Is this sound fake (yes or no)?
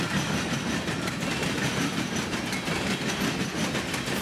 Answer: no